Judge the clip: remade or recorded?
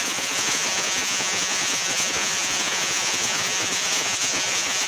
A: remade